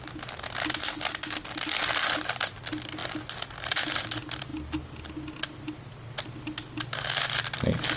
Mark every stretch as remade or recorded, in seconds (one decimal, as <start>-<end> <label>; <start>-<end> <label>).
0.0-8.0 recorded